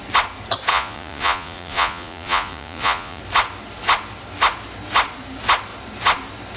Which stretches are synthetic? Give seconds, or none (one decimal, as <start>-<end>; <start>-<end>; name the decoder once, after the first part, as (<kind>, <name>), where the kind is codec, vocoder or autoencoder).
0.7-3.2 (vocoder, Vocos)